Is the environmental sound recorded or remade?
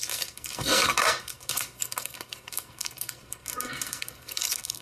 remade